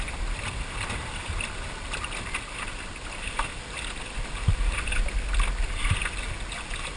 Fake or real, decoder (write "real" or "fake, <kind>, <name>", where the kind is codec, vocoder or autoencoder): real